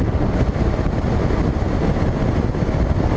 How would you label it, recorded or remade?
recorded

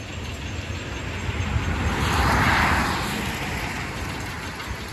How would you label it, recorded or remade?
recorded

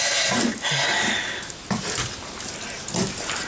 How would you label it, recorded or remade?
recorded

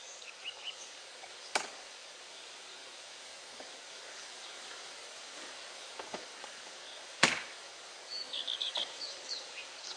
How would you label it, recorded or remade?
remade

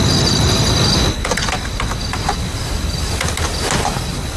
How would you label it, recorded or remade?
recorded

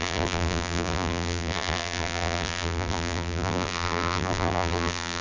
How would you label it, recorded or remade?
remade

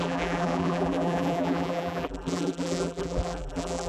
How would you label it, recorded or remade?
remade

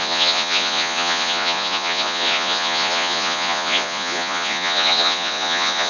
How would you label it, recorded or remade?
remade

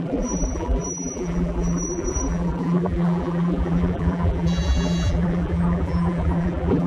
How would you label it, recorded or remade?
remade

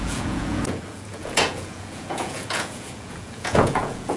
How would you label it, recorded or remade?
remade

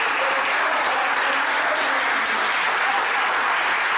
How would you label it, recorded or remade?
recorded